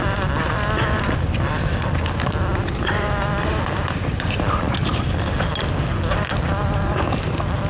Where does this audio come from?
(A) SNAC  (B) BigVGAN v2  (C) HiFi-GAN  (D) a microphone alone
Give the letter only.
D